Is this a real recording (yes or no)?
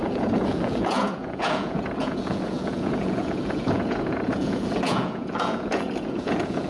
no